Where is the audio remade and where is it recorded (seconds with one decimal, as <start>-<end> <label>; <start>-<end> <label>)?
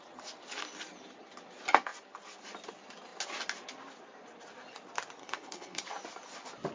0.0-5.2 recorded; 5.2-5.8 remade; 5.8-6.7 recorded